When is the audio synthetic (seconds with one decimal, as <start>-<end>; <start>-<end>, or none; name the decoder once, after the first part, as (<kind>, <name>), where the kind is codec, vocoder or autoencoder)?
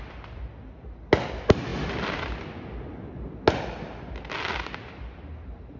none